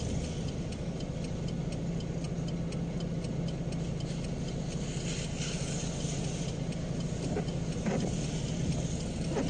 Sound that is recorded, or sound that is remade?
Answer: recorded